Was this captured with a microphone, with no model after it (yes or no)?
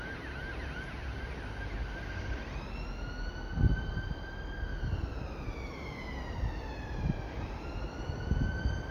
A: yes